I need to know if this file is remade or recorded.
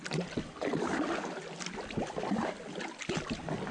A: recorded